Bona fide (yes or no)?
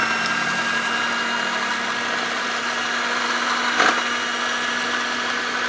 yes